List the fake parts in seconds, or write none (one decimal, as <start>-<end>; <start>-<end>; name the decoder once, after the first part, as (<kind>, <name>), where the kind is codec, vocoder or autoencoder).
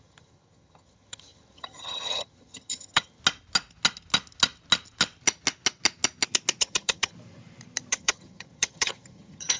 0.0-3.2 (vocoder, HiFi-GAN); 6.6-7.1; 7.9-9.6